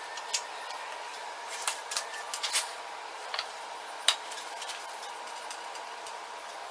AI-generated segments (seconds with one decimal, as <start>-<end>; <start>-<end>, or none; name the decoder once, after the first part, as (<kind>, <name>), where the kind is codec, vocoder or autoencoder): 1.1-1.8 (vocoder, BigVGAN v2); 3.1-5.0